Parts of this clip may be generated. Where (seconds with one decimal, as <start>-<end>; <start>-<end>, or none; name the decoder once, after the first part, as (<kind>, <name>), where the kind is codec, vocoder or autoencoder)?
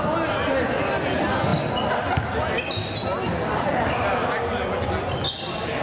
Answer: none